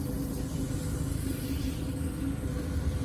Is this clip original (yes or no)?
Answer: yes